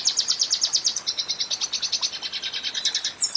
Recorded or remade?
recorded